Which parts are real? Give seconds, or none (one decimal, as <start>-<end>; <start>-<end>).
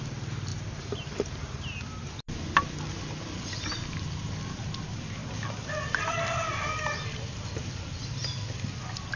0.0-0.5; 2.1-9.2